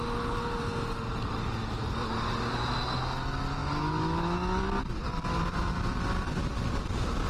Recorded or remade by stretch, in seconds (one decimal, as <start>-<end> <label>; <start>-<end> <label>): 0.0-3.6 recorded; 3.6-4.6 remade; 4.6-7.3 recorded